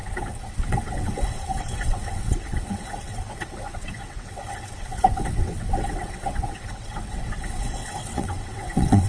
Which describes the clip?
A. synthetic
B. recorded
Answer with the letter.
A